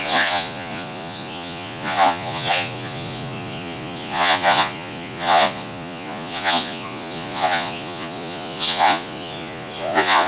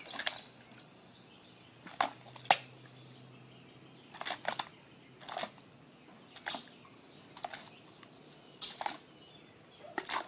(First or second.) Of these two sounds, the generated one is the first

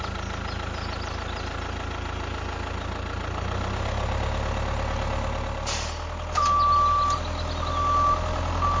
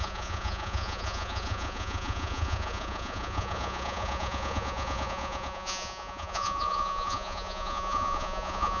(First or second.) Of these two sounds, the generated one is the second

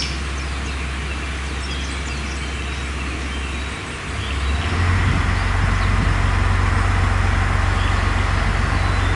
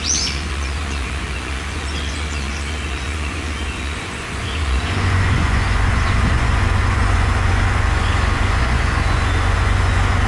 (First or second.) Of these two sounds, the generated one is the second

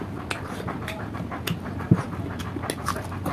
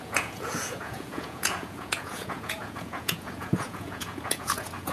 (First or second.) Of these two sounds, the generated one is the second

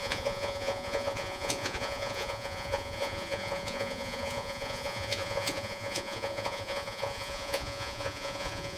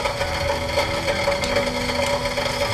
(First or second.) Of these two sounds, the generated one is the first